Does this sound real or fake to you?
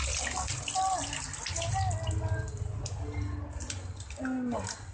real